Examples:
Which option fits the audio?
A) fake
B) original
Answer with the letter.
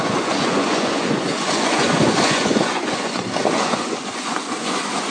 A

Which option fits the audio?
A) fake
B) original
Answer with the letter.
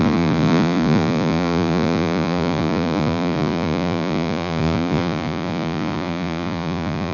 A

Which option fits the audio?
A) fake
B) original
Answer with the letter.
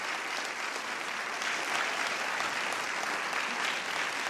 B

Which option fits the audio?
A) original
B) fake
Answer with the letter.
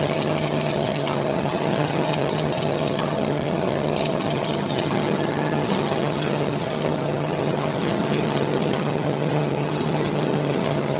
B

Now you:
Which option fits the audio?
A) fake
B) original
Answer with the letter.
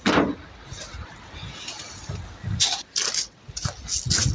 B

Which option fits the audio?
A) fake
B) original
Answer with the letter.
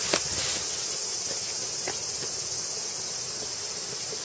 B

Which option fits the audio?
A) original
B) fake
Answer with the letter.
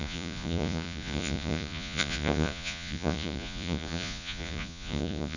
B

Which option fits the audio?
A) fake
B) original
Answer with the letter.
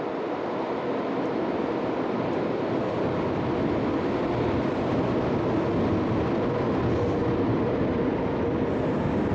B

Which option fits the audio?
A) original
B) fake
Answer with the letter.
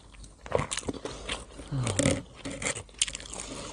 A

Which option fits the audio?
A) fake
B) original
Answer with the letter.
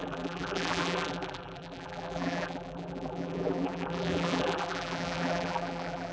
A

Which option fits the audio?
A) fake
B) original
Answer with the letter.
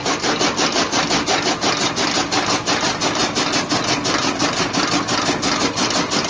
B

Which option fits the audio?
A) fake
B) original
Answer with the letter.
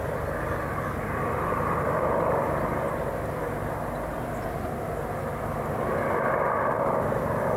B